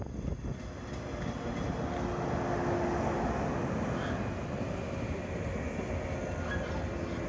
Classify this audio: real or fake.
real